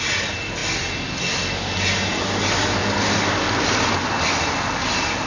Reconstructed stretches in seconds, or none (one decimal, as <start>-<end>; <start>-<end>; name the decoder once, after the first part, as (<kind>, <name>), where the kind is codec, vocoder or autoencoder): none